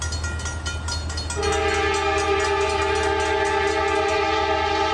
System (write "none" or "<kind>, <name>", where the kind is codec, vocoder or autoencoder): none